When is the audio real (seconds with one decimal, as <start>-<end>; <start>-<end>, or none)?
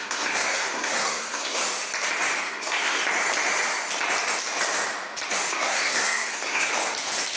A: 1.6-2.4; 3.0-5.5; 6.7-7.4